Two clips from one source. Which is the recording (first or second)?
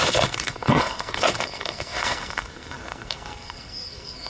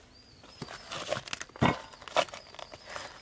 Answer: second